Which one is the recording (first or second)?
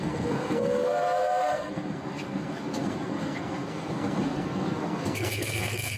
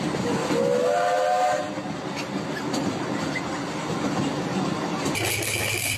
second